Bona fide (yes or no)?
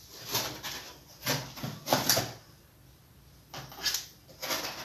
yes